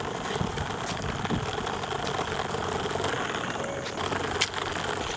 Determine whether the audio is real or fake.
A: real